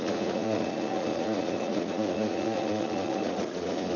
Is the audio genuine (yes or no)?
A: no